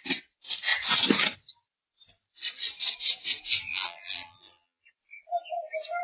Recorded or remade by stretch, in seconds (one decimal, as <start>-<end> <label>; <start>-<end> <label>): 0.0-3.7 recorded; 3.7-4.8 remade; 4.8-6.0 recorded